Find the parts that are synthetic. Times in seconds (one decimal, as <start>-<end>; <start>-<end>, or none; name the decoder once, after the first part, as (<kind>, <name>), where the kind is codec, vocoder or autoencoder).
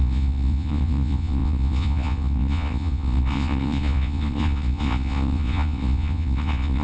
0.0-6.8 (vocoder, Vocos)